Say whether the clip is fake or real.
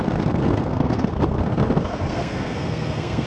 fake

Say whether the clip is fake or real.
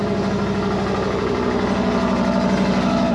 real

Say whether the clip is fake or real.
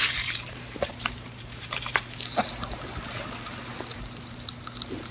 fake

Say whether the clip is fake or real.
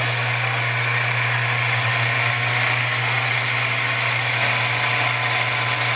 real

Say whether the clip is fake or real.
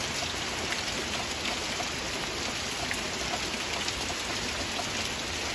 real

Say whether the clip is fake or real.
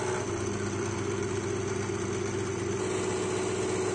real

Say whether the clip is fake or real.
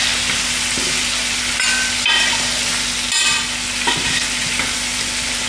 real